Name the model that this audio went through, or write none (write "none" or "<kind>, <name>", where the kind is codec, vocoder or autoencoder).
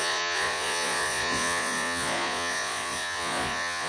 vocoder, Vocos